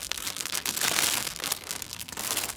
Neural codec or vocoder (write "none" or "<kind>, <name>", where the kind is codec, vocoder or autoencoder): codec, SNAC